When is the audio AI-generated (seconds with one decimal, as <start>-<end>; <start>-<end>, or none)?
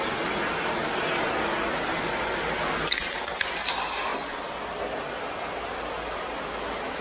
none